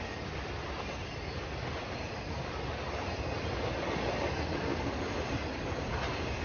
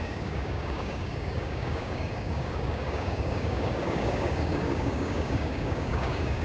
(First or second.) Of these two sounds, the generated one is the second